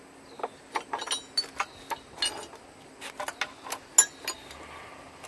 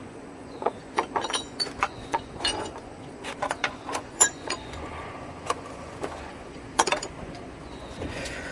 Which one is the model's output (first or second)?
second